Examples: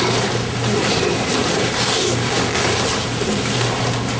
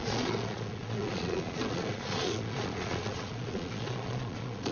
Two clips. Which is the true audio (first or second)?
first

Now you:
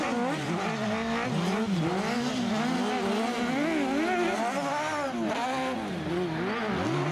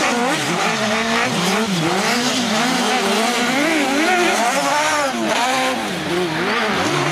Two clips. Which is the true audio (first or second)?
first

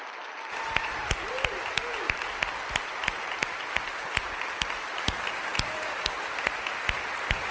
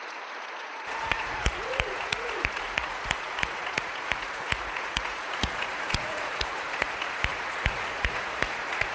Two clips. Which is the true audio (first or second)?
first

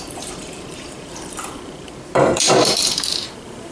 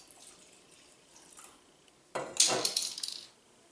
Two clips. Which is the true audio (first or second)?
second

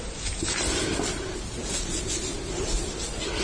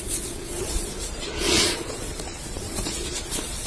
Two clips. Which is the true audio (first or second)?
first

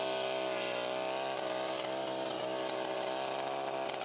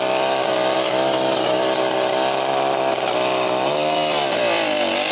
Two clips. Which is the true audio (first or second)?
first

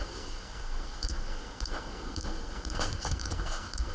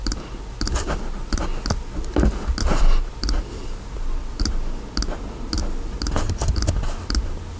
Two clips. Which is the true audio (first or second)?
second